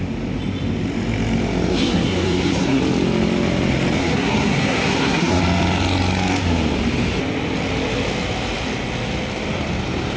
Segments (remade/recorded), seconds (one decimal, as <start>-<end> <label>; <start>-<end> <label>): 0.0-1.7 recorded; 1.7-2.8 remade; 2.8-4.0 recorded; 4.0-5.4 remade; 5.4-10.2 recorded